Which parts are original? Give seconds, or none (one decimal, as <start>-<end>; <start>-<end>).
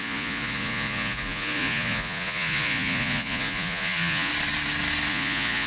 4.3-5.1